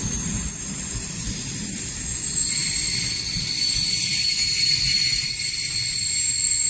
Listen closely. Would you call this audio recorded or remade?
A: recorded